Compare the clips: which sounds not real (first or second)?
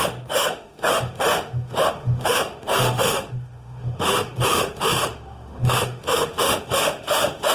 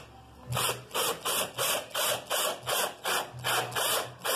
first